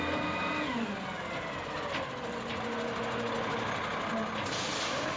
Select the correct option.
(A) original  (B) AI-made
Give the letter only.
A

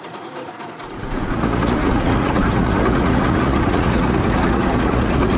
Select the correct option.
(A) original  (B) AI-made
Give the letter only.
B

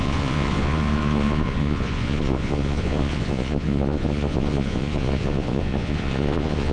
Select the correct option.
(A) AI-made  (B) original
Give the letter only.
A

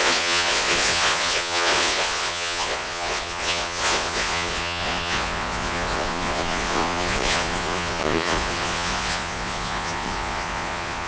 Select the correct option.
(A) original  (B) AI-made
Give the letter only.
B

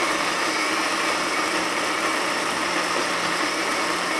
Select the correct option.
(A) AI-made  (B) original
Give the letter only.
B